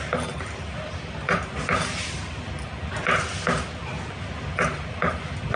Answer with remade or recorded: recorded